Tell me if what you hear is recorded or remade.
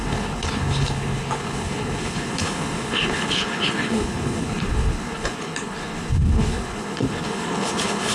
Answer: remade